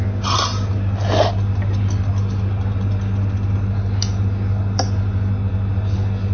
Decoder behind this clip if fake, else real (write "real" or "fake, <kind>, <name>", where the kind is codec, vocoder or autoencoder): real